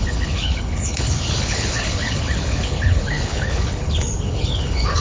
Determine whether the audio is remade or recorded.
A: remade